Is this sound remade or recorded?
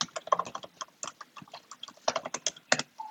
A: recorded